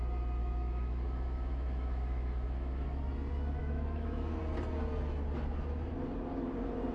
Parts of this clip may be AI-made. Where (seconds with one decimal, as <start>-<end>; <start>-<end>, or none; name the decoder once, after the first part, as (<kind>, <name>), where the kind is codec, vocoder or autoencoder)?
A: 0.4-3.0 (autoencoder, DAC-VAE); 3.6-4.4